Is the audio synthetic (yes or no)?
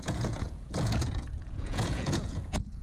yes